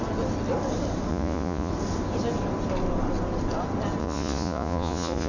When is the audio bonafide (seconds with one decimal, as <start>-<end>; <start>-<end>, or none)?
0.0-1.1; 1.7-4.0